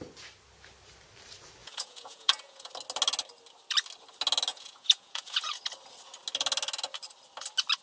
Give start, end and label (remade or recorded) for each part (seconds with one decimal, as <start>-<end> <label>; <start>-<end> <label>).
0.0-1.6 recorded; 1.6-2.7 remade; 2.7-4.5 recorded; 4.5-5.6 remade; 5.6-7.8 recorded